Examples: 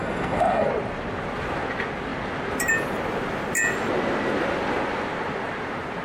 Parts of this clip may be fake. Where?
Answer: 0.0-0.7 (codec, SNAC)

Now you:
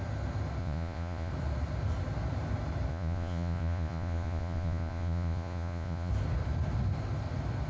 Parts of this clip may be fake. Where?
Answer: 0.6-1.3 (vocoder, Vocos); 2.9-6.1

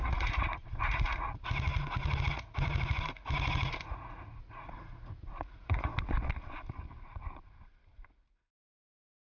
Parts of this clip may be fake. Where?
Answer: 0.0-5.9 (vocoder, Vocos); 8.1-9.3

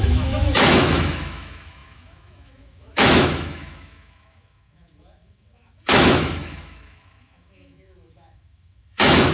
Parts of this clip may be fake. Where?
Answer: 0.0-9.3 (autoencoder, DAC-VAE)